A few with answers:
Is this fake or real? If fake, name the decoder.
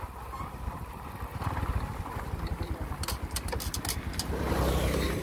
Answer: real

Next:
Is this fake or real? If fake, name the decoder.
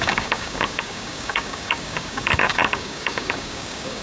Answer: fake, codec, DAC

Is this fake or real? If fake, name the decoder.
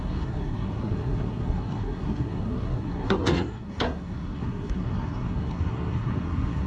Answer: fake, codec, SNAC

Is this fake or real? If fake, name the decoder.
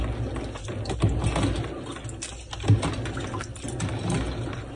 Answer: real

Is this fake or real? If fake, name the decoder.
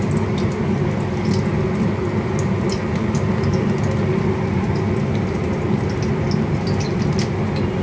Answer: real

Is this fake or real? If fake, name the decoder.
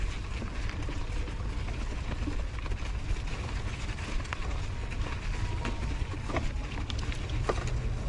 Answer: real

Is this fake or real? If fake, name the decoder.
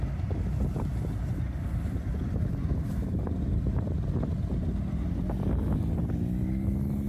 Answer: real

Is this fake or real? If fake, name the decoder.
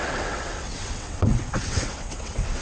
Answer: fake, vocoder, WaveNeXt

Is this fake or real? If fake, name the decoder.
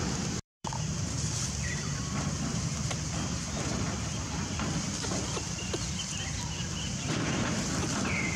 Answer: fake, vocoder, BigVGAN v2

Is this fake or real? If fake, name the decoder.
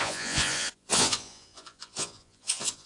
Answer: fake, vocoder, Vocos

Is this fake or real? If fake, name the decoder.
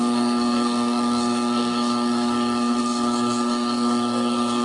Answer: fake, codec, SNAC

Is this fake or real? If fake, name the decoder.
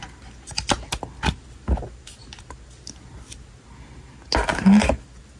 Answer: real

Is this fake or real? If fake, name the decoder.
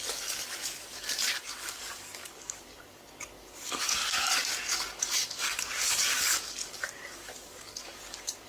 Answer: fake, codec, DAC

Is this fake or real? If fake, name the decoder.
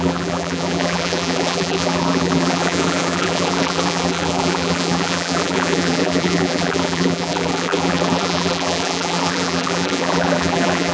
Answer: fake, vocoder, BigVGAN v2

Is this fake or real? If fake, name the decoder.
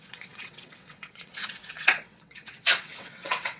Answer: fake, vocoder, WaveNeXt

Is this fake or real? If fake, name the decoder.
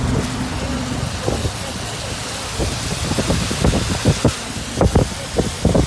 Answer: real